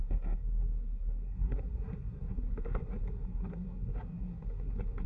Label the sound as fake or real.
fake